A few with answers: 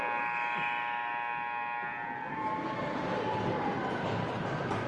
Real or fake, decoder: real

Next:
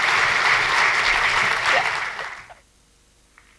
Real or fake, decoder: real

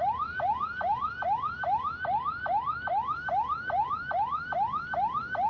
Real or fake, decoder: real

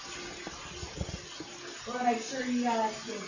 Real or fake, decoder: real